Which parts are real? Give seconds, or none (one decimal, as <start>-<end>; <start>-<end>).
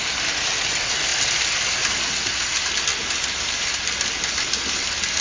0.0-5.2